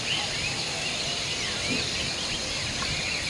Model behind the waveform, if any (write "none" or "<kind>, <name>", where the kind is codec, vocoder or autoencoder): none